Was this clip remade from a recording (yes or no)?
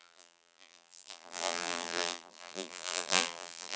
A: yes